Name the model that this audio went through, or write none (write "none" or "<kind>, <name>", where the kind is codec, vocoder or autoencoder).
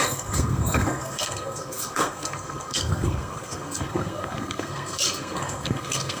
codec, SNAC